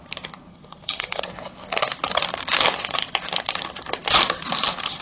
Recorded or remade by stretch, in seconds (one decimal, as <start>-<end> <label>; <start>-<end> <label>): 0.0-0.5 recorded; 0.5-1.2 remade; 1.2-5.0 recorded